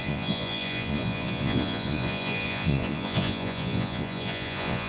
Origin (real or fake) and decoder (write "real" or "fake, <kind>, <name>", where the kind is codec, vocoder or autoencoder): fake, vocoder, Vocos